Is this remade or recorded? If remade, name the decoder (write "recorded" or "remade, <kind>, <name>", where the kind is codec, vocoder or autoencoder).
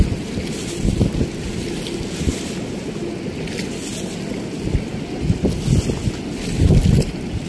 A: recorded